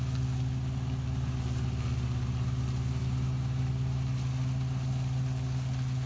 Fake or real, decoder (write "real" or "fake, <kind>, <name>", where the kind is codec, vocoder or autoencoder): real